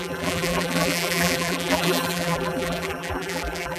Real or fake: fake